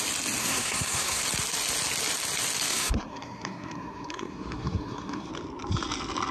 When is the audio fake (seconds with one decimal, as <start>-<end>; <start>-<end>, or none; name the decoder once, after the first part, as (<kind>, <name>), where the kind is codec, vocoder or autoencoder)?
0.4-1.2 (codec, SNAC); 2.7-5.3